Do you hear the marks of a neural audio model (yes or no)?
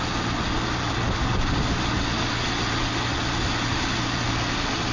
no